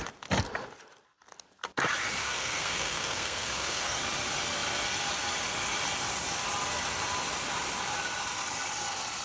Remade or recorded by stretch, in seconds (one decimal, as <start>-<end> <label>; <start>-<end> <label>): 0.0-2.2 recorded; 2.2-4.0 remade; 4.0-9.2 recorded